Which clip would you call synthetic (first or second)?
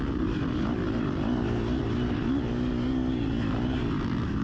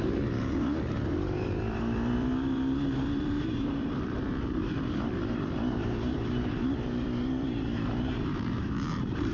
second